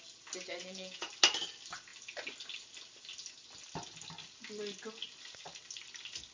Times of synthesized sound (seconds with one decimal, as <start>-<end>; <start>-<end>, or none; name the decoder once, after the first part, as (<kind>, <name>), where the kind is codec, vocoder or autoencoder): 0.6-1.1 (vocoder, Vocos)